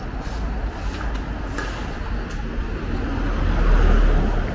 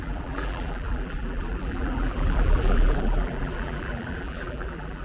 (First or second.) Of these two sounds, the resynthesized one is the second